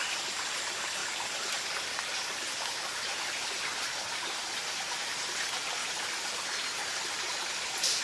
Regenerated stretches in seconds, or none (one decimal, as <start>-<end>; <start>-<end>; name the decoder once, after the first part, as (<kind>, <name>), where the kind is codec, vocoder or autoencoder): none